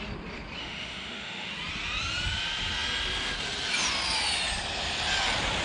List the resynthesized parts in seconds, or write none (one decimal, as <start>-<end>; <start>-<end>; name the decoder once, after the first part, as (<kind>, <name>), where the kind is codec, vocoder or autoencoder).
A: 0.6-1.5 (autoencoder, DAC-VAE)